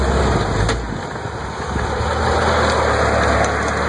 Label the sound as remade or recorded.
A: recorded